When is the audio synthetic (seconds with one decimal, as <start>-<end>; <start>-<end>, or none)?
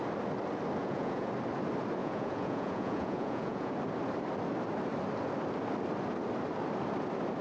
0.8-1.3; 2.0-3.7